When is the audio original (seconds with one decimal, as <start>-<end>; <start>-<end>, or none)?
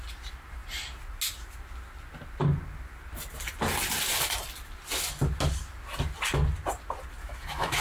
0.0-7.2